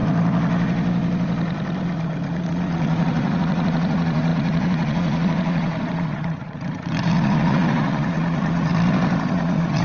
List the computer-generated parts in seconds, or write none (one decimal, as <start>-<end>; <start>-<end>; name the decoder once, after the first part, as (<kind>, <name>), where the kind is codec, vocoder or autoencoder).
2.3-8.7 (vocoder, Vocos); 9.3-9.8